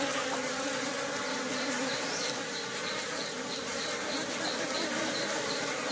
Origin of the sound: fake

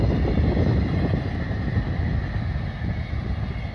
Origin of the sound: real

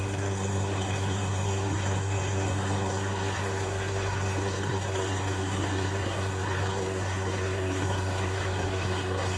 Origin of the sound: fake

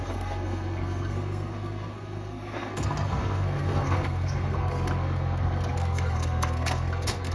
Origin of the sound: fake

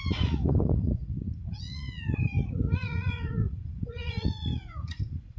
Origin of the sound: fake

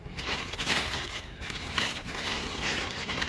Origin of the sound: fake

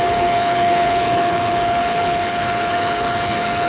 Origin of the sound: fake